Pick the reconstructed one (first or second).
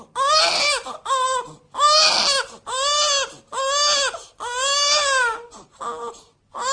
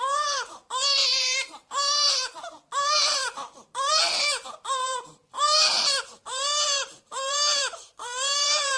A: second